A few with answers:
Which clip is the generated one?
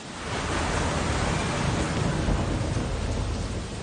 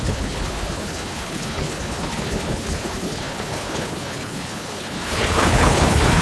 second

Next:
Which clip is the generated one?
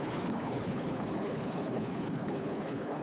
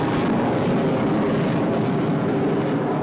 first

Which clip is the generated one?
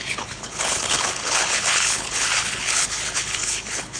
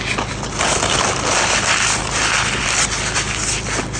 first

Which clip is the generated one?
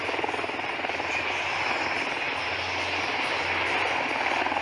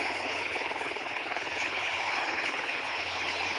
second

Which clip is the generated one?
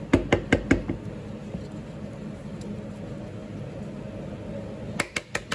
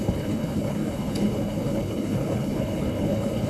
second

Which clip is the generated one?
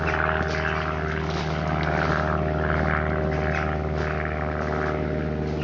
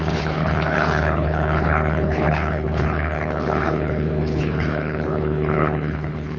second